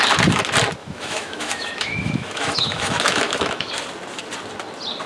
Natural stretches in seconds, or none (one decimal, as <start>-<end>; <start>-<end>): 0.0-0.8; 3.7-5.1